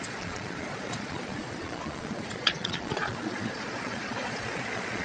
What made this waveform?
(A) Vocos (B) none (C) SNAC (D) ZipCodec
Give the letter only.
A